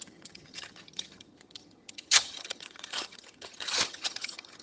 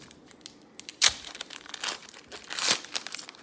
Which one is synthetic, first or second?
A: first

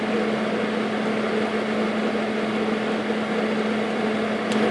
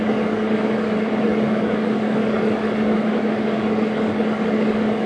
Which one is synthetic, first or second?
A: second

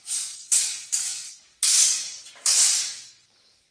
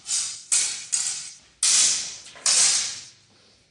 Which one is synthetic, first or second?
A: first